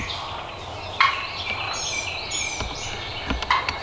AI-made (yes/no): no